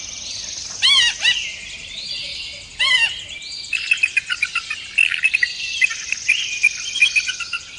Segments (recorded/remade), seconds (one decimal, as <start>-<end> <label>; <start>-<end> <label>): 0.0-7.8 recorded